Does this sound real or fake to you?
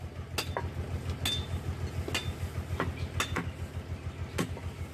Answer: real